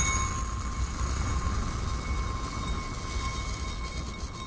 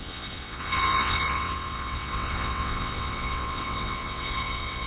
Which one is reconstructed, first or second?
second